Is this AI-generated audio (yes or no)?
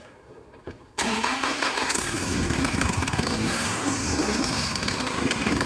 yes